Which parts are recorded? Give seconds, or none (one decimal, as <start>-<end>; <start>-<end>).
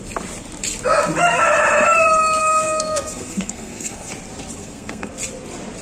0.0-2.4; 4.1-4.6; 5.1-5.8